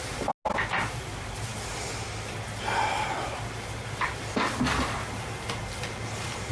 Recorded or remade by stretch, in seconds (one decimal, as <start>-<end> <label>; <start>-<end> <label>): 0.0-6.5 recorded